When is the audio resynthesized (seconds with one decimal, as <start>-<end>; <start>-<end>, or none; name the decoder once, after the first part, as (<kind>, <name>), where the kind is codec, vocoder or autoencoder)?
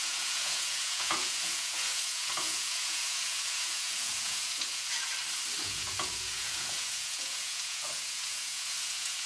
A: 0.0-5.1 (vocoder, Vocos); 5.6-9.3